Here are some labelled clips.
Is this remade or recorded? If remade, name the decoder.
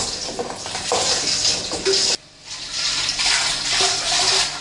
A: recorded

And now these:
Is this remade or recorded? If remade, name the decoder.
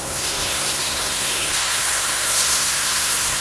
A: remade, codec, SNAC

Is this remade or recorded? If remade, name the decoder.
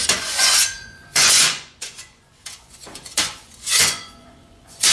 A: remade, vocoder, Vocos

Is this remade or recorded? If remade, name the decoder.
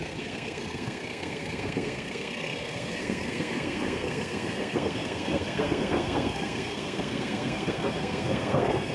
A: remade, codec, SNAC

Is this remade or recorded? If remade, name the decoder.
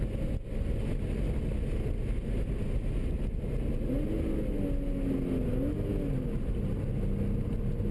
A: recorded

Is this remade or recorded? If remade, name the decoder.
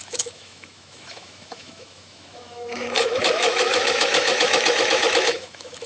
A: remade, autoencoder, DAC-VAE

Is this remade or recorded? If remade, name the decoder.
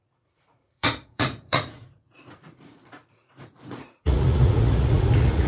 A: remade, vocoder, Vocos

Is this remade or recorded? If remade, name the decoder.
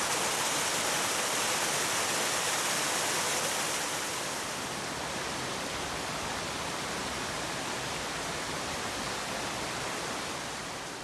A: recorded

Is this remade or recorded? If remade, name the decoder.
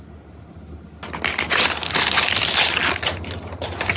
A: recorded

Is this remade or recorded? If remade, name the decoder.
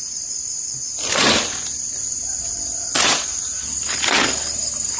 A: recorded